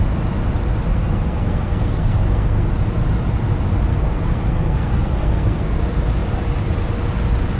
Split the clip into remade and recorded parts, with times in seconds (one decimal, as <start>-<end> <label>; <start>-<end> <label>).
0.0-0.9 recorded; 0.9-2.7 remade; 2.7-3.9 recorded; 3.9-5.7 remade; 5.7-7.6 recorded